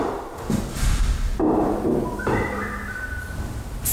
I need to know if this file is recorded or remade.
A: recorded